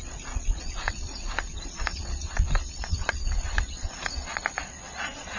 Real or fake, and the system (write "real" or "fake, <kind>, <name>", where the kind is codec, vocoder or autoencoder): fake, vocoder, Vocos